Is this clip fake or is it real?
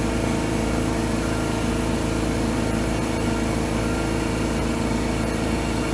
real